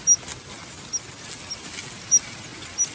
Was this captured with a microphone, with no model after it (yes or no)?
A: yes